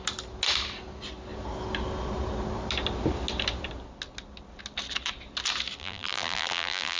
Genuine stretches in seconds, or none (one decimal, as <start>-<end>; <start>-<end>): 0.0-5.8